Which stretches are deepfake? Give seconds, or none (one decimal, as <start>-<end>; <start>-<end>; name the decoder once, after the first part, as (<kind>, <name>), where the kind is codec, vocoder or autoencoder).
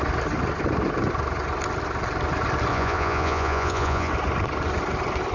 2.7-4.1 (vocoder, Vocos)